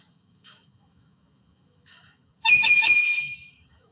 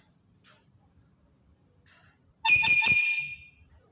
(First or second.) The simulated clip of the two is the first